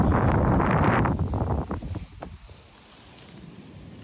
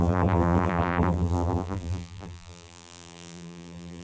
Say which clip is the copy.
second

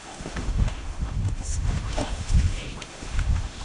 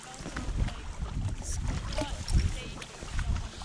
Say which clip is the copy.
first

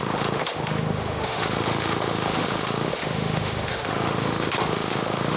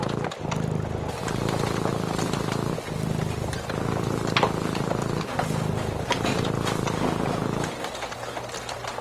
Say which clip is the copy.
first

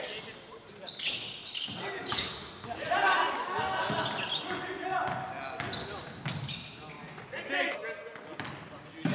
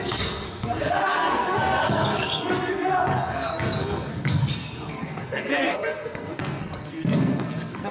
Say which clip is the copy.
second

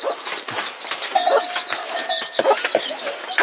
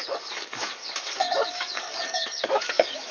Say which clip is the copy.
second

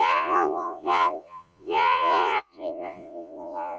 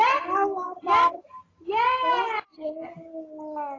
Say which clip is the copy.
first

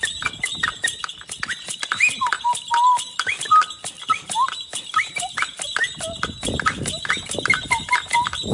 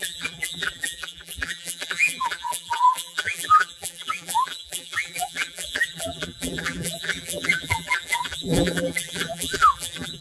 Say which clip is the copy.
second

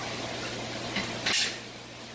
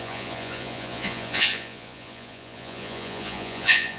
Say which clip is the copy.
second